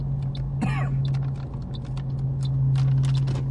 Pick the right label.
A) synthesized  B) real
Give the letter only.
B